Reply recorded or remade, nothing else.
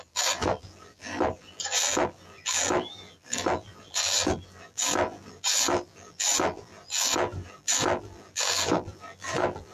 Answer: remade